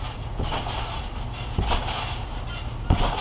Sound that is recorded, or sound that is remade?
recorded